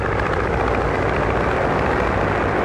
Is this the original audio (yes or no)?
no